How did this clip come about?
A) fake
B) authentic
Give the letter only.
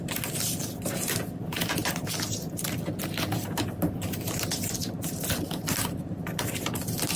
B